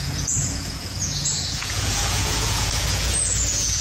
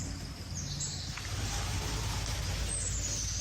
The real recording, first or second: second